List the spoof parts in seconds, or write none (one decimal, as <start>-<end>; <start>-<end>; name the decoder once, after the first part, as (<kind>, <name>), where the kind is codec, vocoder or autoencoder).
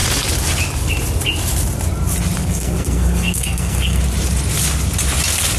2.4-4.0 (codec, SNAC)